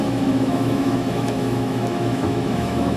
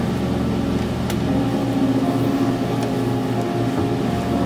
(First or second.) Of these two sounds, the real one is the second